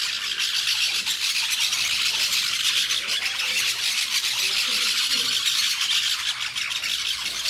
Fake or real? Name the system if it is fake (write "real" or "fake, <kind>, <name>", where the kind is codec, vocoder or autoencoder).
real